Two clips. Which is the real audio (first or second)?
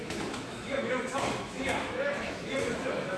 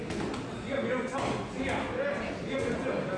second